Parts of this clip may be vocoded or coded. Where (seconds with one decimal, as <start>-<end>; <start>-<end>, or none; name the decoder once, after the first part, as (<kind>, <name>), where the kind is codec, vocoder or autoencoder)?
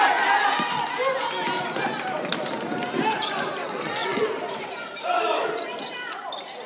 3.6-4.3 (vocoder, WaveNeXt)